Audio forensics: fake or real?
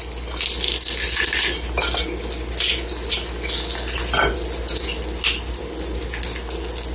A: real